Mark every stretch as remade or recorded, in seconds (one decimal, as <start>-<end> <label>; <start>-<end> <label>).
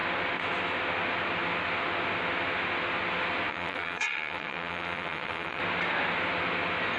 0.0-3.5 recorded; 3.5-5.6 remade; 5.6-7.0 recorded